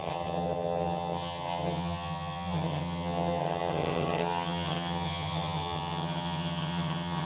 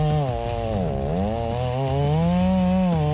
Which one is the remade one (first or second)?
first